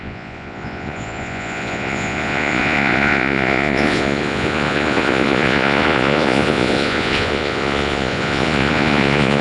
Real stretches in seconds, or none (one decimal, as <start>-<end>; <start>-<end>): none